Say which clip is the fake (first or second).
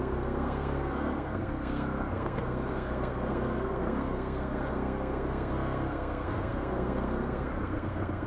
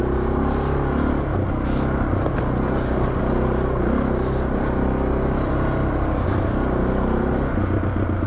first